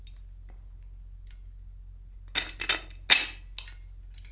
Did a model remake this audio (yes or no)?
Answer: no